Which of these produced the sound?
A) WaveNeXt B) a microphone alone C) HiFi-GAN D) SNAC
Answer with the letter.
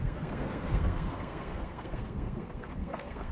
D